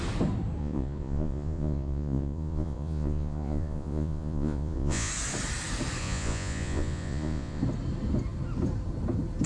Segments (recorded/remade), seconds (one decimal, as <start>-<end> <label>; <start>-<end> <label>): 0.0-0.6 recorded; 0.6-5.1 remade; 5.1-6.0 recorded; 6.0-7.6 remade; 7.6-9.5 recorded